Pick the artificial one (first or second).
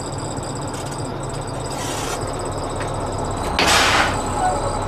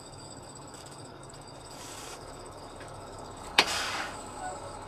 second